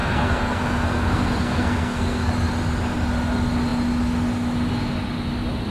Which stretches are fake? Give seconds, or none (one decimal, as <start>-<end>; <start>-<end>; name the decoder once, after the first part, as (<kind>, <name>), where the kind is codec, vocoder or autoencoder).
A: 0.0-2.3 (codec, SNAC)